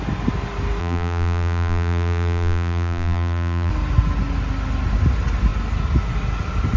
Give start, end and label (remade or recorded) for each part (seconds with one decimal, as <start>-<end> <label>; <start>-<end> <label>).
0.0-0.8 recorded; 0.8-3.7 remade; 3.7-6.8 recorded